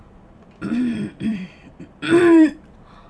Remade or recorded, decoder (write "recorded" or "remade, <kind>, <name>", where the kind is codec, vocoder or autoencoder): remade, vocoder, BigVGAN v2